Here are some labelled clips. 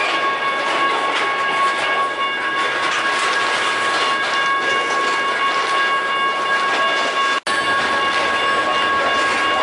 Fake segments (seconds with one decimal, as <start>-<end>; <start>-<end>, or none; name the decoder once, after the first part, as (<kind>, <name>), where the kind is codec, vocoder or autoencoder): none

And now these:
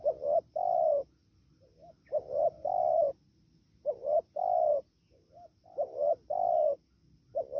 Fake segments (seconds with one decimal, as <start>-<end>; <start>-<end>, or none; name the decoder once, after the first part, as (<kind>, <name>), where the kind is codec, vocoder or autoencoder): none

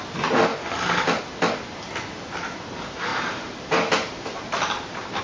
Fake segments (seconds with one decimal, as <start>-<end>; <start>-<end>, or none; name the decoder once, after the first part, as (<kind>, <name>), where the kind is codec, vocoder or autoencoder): none

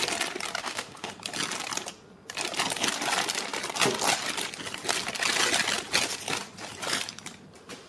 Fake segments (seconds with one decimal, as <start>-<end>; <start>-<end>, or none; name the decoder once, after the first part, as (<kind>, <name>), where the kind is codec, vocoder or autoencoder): 0.6-1.1 (autoencoder, DAC-VAE)